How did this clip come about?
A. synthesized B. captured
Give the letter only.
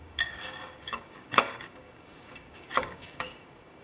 A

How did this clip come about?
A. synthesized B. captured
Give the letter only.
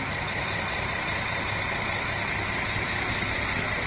B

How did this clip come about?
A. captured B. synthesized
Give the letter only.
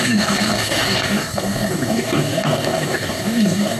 B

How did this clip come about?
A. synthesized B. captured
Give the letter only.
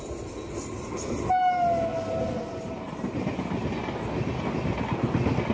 B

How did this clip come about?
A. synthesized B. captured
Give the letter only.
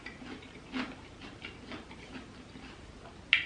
B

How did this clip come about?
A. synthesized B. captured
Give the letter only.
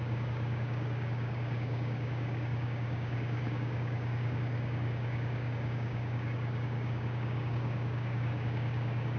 A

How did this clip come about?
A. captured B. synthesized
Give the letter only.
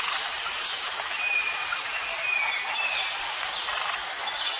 A